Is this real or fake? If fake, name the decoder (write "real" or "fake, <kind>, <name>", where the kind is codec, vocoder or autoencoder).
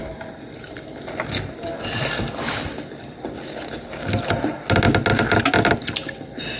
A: real